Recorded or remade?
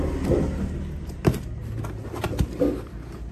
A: recorded